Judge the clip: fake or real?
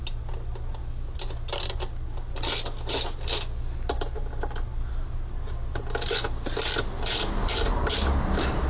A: real